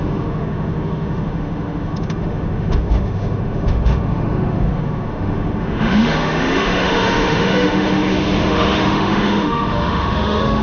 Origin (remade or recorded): remade